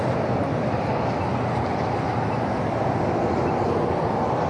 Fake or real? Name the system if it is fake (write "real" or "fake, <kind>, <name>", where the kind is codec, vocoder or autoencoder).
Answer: real